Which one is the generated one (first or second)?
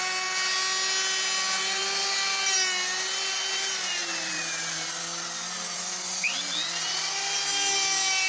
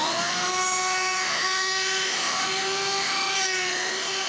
second